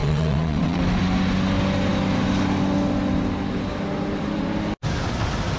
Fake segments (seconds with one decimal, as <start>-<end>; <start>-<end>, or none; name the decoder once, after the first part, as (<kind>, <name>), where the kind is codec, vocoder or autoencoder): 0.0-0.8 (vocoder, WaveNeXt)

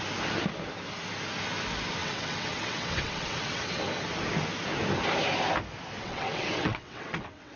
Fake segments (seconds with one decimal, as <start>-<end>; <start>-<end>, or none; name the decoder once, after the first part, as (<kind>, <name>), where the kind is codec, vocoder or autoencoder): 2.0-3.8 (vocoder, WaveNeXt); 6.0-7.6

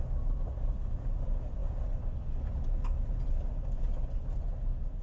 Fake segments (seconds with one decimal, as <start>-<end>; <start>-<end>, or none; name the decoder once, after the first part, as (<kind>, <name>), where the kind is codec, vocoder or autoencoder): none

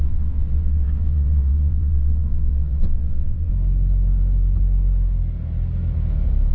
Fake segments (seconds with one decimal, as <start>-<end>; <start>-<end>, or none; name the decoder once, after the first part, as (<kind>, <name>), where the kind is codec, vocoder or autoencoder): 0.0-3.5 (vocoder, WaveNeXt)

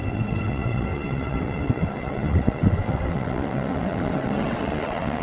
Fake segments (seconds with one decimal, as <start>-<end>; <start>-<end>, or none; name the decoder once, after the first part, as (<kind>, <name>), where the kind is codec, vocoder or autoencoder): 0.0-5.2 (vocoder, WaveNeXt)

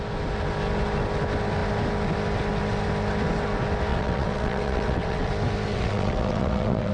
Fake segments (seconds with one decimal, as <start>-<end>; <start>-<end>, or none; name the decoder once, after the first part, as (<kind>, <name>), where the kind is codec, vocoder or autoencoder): 3.9-5.3 (vocoder, WaveNeXt); 5.7-6.9

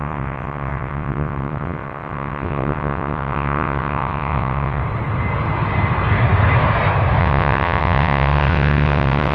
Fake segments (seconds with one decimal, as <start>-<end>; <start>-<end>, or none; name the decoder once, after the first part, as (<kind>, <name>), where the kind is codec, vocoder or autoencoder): 0.0-4.8 (vocoder, WaveNeXt); 7.2-9.3